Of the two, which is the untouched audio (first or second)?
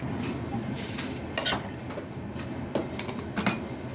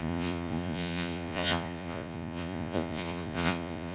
first